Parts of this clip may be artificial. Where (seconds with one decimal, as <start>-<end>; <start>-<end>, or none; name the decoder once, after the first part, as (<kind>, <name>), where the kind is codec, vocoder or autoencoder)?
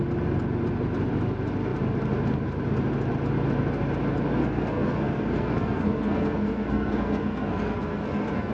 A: 4.4-8.5 (codec, SNAC)